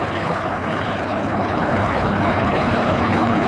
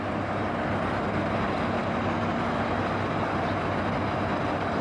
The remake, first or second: first